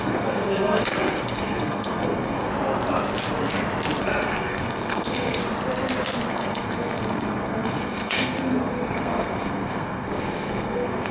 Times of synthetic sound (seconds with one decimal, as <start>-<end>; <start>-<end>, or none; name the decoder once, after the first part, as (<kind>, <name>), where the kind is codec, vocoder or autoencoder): 0.0-2.5 (codec, SNAC); 4.0-5.4; 6.3-11.1

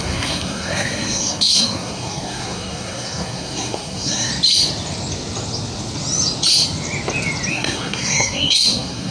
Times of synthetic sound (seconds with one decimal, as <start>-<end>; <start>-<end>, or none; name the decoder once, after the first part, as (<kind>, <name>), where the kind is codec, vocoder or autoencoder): 0.0-4.3 (codec, SNAC); 7.5-9.1